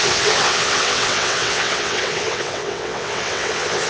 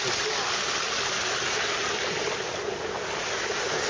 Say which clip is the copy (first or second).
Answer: first